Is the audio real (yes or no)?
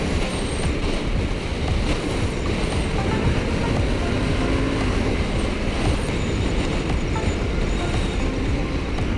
yes